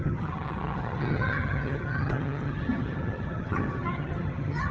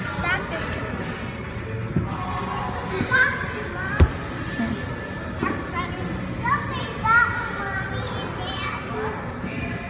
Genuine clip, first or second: second